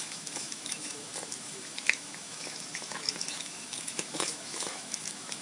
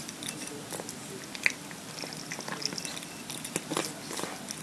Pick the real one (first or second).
second